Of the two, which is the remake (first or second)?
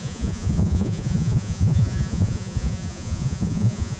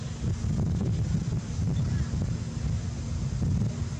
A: first